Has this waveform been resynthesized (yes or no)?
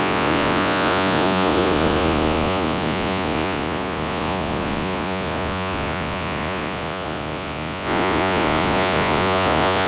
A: yes